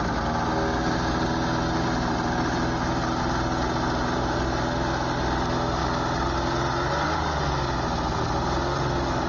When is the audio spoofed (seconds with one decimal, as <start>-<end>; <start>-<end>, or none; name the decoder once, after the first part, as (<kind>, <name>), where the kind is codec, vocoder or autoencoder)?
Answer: none